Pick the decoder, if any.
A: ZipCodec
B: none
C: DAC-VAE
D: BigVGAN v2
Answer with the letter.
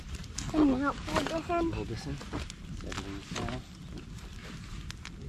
B